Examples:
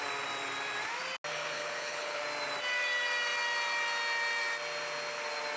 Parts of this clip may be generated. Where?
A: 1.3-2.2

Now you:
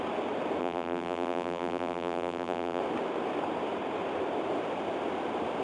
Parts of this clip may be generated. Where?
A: 0.6-2.8

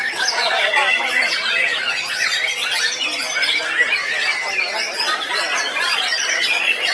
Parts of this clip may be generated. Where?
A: 0.0-0.8; 4.9-6.9